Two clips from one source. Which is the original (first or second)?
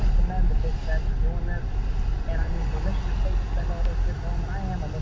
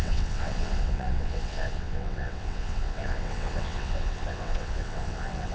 first